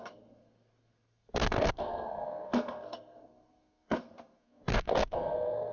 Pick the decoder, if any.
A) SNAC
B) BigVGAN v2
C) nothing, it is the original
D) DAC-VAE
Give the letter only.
A